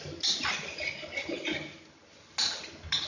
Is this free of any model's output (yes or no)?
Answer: yes